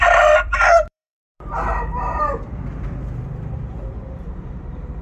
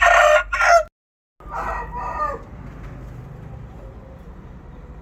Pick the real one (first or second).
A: second